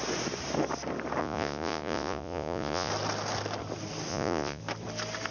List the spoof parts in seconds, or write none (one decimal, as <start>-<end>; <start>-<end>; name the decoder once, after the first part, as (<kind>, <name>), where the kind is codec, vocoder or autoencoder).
1.2-2.9 (vocoder, Vocos); 4.1-4.6